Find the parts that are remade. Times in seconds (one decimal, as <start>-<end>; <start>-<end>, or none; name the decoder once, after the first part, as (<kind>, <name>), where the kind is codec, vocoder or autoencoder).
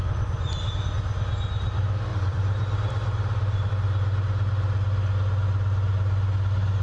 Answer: 0.0-0.9 (vocoder, BigVGAN v2); 2.1-3.7